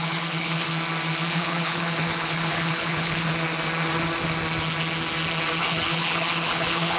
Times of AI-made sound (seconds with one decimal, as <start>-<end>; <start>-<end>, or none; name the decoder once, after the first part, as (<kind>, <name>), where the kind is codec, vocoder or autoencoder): 0.0-0.7 (codec, HILCodec); 1.3-3.3; 5.6-7.0